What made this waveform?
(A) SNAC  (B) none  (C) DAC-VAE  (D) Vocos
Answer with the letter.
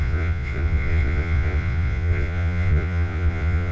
D